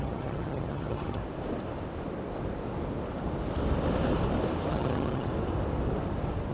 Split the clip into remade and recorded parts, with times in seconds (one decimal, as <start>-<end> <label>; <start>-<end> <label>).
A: 0.0-1.2 remade; 1.2-4.7 recorded; 4.7-5.3 remade; 5.3-6.5 recorded